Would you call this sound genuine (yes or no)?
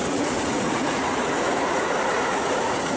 no